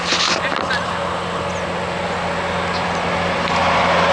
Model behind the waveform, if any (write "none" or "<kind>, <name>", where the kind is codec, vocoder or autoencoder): none